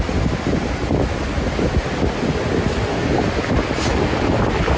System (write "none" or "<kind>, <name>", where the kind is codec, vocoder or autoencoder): none